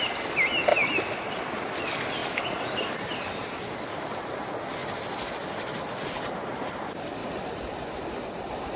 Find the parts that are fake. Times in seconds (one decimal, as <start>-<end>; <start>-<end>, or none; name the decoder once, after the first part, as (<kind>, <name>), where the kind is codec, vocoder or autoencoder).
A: 4.8-6.1 (vocoder, BigVGAN v2); 7.2-8.8